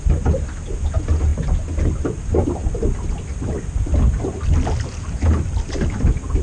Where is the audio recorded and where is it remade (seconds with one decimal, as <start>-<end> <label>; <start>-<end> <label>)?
0.0-6.4 recorded